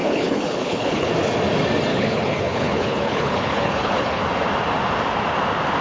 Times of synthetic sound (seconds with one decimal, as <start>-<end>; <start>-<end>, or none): 0.0-1.1; 1.9-4.2